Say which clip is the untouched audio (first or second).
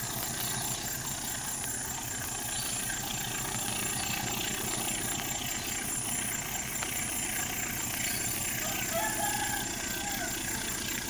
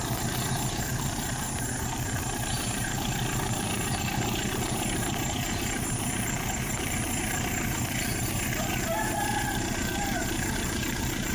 first